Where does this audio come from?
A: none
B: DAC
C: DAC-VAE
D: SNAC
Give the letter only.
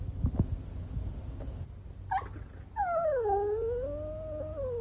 A